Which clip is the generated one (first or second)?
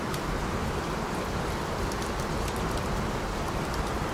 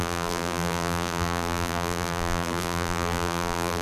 second